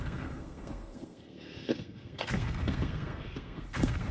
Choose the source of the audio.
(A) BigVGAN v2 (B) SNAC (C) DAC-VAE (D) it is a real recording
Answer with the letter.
B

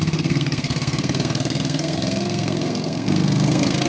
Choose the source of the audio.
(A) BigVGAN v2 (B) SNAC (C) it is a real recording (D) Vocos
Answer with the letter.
B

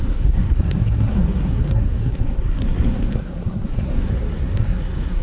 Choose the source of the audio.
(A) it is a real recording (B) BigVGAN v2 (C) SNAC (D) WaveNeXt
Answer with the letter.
C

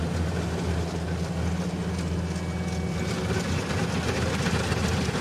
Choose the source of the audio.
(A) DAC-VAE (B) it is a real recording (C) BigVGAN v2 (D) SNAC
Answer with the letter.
B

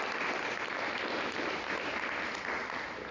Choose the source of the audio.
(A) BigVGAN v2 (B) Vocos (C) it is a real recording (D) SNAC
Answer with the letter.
C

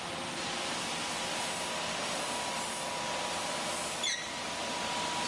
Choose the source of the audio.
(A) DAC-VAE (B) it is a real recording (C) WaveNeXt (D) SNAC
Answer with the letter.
B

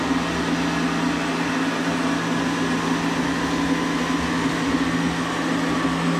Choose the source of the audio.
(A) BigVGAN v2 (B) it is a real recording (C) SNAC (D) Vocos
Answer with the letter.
B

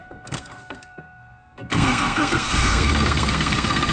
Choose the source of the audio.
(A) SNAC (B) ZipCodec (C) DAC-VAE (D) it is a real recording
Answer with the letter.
A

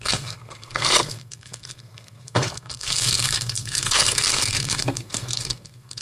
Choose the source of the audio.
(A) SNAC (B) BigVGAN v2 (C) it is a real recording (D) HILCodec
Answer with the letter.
A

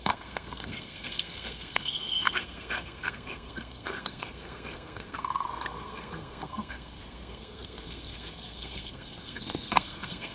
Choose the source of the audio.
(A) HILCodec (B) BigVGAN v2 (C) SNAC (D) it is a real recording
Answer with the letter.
C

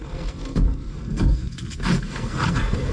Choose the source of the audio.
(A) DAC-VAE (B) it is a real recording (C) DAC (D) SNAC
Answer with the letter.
D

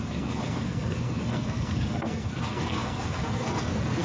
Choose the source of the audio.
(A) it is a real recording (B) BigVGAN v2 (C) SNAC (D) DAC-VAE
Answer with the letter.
C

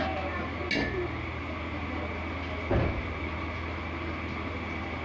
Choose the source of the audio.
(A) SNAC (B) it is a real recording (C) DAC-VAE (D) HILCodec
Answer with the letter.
B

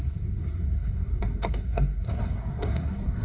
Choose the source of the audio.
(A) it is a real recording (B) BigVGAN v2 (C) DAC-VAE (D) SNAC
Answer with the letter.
D